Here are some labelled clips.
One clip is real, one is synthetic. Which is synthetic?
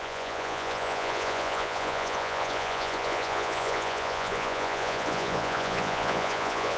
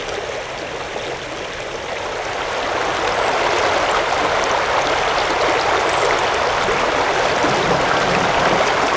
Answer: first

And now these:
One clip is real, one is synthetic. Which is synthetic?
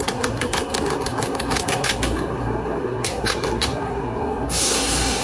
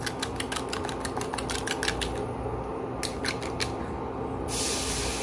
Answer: first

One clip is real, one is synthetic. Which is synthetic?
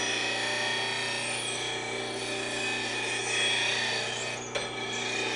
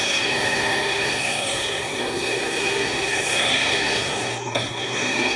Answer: second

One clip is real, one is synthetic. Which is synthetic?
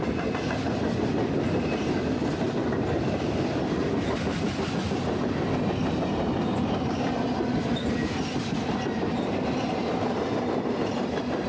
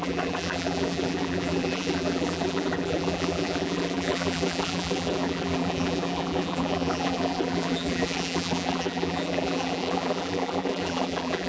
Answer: second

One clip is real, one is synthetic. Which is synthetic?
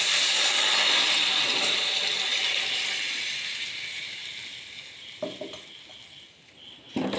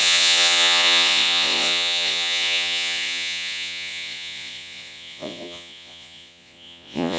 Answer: second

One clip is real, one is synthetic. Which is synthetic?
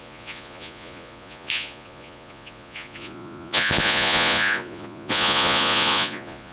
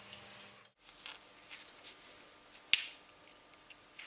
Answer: first